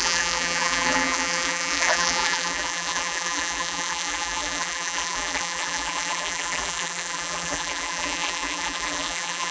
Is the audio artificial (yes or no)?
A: yes